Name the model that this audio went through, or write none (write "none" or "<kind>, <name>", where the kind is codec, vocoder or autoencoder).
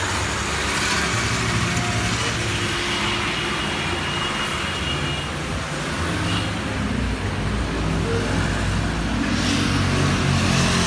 none